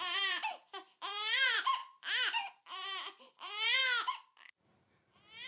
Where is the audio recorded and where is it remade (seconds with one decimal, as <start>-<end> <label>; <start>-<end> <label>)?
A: 0.0-3.8 remade; 3.8-4.5 recorded; 4.5-5.5 remade